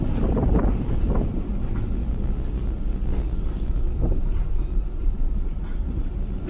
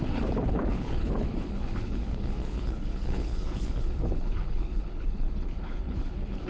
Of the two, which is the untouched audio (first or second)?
first